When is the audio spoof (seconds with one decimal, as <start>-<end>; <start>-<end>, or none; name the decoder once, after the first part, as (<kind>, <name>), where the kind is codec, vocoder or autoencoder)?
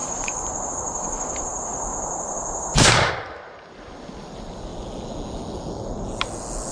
0.0-0.7 (vocoder, Vocos)